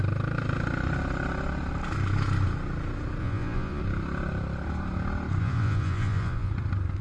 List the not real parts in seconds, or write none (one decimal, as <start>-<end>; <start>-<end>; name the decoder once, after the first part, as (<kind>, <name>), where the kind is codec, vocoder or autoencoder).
3.2-3.8 (vocoder, Vocos); 5.4-6.5